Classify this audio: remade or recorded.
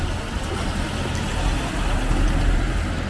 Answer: recorded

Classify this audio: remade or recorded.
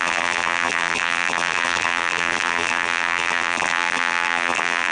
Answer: remade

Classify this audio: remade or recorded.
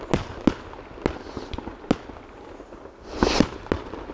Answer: recorded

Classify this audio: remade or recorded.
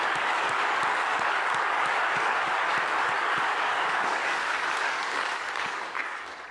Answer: remade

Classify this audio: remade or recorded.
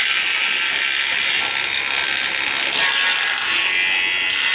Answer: recorded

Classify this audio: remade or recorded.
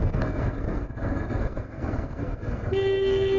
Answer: remade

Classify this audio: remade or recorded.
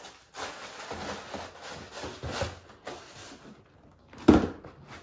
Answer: recorded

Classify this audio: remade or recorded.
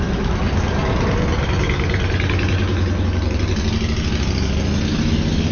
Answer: recorded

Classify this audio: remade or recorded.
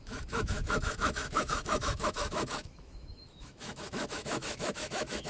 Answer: remade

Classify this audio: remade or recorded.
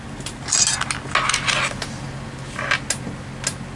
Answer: recorded